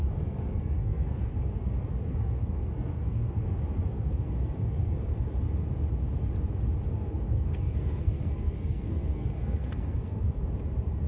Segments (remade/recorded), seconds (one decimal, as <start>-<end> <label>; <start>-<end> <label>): 0.0-5.1 remade; 5.1-6.9 recorded; 6.9-10.4 remade; 10.4-11.1 recorded